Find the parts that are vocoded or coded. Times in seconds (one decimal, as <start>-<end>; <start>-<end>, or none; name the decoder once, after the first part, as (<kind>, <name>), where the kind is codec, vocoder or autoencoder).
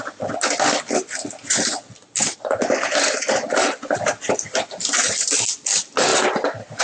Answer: 2.2-2.7 (vocoder, Vocos)